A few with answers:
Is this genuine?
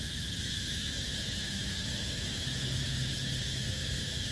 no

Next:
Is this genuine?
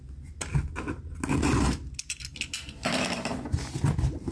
yes